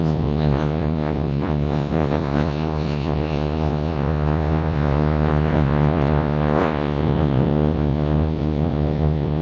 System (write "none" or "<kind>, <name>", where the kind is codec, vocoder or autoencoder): vocoder, Vocos